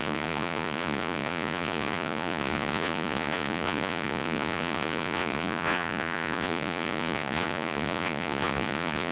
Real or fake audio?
fake